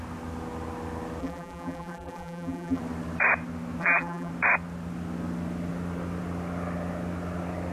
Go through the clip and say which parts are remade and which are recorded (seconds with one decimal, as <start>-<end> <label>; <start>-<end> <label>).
0.0-1.2 recorded; 1.2-2.8 remade; 2.8-3.8 recorded; 3.8-4.3 remade; 4.3-7.7 recorded